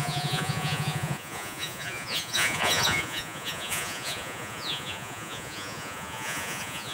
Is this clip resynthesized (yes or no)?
yes